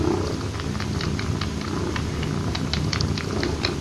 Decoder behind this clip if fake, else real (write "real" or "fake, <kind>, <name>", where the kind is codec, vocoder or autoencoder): real